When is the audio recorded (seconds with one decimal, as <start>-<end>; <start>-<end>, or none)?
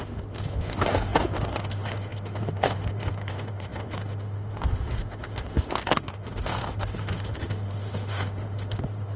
none